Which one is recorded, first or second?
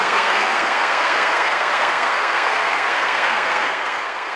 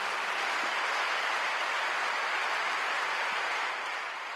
second